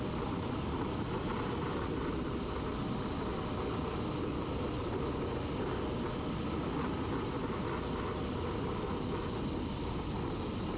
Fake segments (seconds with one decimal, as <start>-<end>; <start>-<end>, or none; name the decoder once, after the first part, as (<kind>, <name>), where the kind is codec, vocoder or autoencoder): none